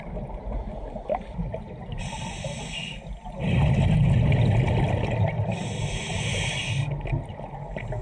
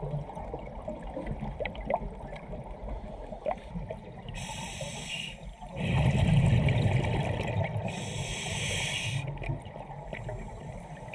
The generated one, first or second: second